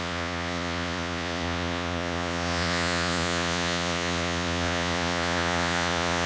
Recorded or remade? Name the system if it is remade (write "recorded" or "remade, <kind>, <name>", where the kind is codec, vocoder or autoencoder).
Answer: remade, vocoder, Vocos